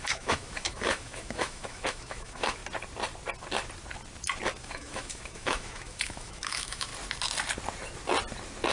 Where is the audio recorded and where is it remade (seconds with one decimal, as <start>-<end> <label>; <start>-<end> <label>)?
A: 0.0-2.6 remade; 2.6-4.6 recorded; 4.6-6.9 remade; 6.9-8.7 recorded